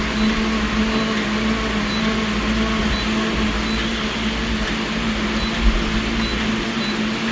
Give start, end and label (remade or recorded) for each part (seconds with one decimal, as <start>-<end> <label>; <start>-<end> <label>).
0.0-7.3 recorded

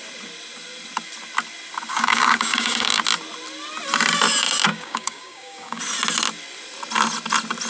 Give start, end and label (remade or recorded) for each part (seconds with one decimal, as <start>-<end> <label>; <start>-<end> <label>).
0.0-1.9 recorded; 1.9-3.0 remade; 3.0-4.7 recorded; 4.7-5.8 remade; 5.8-7.7 recorded

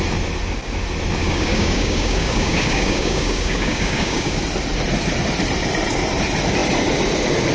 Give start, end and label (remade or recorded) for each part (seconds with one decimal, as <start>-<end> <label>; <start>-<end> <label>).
0.0-1.2 recorded; 1.2-4.4 remade; 4.4-7.5 recorded

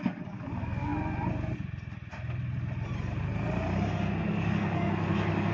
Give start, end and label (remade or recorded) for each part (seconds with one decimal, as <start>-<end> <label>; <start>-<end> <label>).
0.0-0.9 remade; 0.9-4.2 recorded; 4.2-5.5 remade

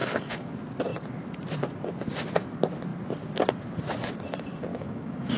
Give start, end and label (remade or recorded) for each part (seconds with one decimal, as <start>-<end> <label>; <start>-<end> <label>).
0.0-0.5 remade; 0.5-4.7 recorded; 4.7-5.4 remade

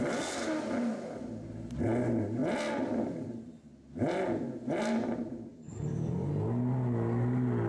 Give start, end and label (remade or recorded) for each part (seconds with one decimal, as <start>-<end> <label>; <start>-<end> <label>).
0.0-5.5 recorded; 5.5-6.3 remade; 6.3-7.7 recorded

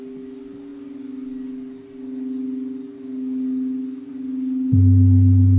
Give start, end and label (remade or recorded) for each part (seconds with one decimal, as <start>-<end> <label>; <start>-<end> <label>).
0.0-5.6 recorded